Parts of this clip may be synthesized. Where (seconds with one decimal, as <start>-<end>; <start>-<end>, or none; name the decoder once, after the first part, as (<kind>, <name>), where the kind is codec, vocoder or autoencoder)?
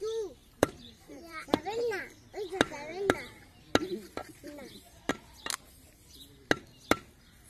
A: 0.4-2.0 (vocoder, BigVGAN v2); 4.2-5.1